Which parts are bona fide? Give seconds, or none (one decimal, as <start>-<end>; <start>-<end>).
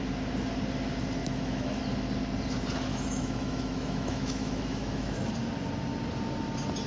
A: 0.0-1.2; 1.8-2.9; 5.3-6.9